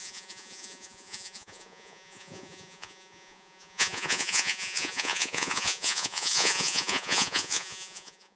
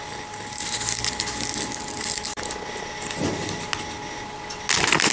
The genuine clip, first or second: second